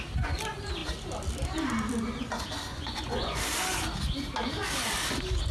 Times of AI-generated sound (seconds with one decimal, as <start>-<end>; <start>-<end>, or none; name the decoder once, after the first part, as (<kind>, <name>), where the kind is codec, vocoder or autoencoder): 2.7-3.4 (vocoder, Vocos)